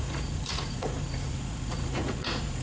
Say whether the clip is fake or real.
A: fake